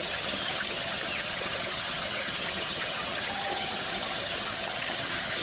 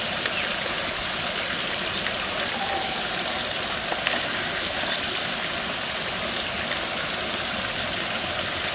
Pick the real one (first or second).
second